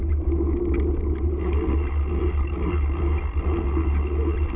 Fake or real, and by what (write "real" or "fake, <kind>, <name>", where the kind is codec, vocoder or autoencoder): real